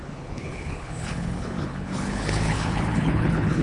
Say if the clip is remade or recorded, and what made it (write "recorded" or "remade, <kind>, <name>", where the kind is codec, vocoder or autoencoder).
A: remade, codec, HILCodec